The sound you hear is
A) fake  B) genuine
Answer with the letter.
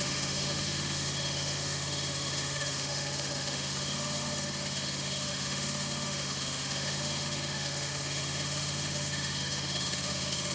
A